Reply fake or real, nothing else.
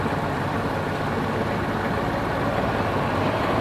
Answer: real